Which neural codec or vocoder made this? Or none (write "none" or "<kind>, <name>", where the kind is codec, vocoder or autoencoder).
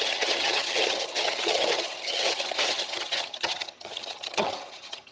vocoder, HiFi-GAN